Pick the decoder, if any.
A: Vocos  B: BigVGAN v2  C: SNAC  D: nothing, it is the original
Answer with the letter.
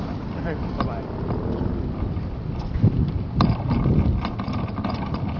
B